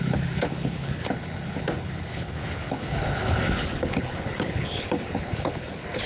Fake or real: fake